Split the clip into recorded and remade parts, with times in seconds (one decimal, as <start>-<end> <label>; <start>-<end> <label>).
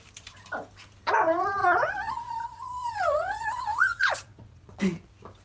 0.0-1.6 recorded; 1.6-4.8 remade; 4.8-5.4 recorded